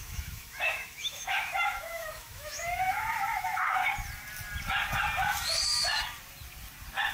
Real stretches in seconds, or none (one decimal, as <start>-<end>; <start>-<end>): 3.8-7.1